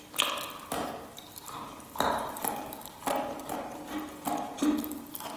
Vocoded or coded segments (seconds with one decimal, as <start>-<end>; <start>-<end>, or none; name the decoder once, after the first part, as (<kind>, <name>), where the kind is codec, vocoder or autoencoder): none